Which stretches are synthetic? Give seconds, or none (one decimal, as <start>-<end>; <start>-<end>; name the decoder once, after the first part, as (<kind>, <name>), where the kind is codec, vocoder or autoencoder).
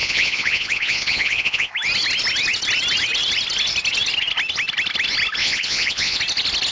0.0-1.7 (vocoder, Vocos); 5.4-6.2